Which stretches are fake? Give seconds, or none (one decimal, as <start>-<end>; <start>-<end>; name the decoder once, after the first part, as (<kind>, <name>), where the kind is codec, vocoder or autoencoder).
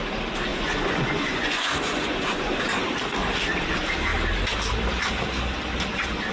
0.5-2.6 (vocoder, Vocos)